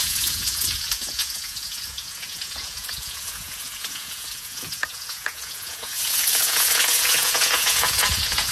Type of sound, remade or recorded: remade